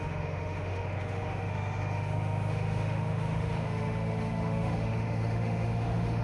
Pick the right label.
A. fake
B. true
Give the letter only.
A